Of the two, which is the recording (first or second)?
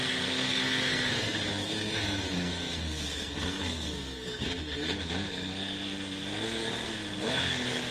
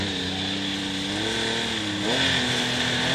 second